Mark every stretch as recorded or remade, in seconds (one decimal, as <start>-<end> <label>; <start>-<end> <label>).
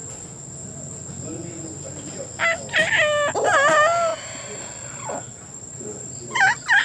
0.0-4.1 recorded; 4.1-4.6 remade; 4.6-6.8 recorded